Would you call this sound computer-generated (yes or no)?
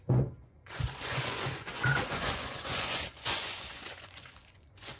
yes